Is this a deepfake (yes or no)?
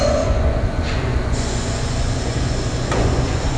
yes